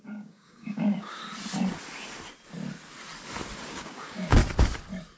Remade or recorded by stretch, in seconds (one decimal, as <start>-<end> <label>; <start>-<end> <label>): 0.0-1.2 remade; 1.2-3.7 recorded; 3.7-4.4 remade; 4.4-5.2 recorded